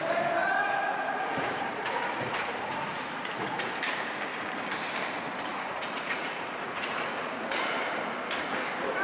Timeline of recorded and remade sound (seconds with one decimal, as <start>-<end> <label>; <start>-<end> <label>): 0.0-0.4 recorded; 0.4-3.7 remade; 3.7-5.5 recorded; 5.5-7.6 remade; 7.6-9.0 recorded